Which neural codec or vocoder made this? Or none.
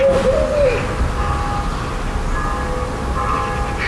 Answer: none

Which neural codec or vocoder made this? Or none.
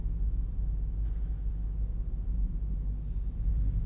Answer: none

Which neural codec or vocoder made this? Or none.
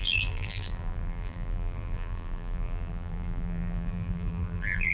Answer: vocoder, BigVGAN v2